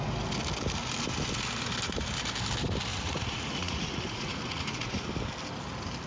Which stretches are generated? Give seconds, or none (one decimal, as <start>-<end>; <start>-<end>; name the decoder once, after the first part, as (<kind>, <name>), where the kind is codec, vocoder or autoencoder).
2.9-5.1 (vocoder, Vocos)